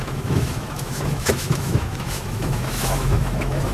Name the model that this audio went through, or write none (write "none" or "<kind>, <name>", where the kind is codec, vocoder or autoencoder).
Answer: autoencoder, DAC-VAE